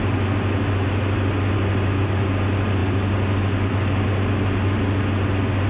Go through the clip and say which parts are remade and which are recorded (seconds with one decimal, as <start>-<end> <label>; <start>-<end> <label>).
0.0-5.7 recorded